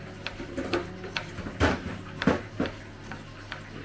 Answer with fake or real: real